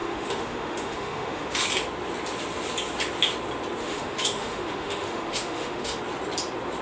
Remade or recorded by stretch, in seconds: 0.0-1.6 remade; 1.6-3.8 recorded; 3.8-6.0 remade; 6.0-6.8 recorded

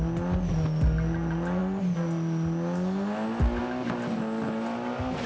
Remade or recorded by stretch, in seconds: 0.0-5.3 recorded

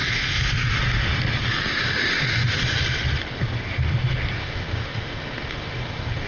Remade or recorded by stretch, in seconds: 0.0-0.8 remade; 0.8-1.4 recorded; 1.4-2.6 remade; 2.6-4.4 recorded; 4.4-6.3 remade